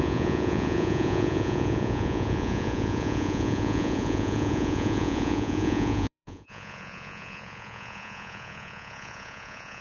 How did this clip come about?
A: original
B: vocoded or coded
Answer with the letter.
B